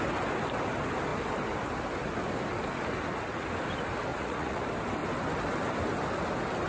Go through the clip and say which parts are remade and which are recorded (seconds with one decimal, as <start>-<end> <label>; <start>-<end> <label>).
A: 0.0-4.1 recorded; 4.1-4.6 remade; 4.6-6.7 recorded